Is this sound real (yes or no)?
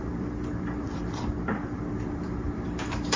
no